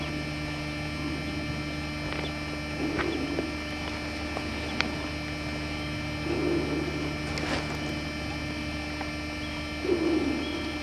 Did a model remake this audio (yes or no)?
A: no